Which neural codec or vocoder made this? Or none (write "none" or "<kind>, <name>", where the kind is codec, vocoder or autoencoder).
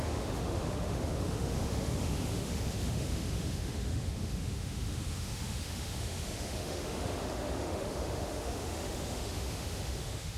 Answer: autoencoder, DAC-VAE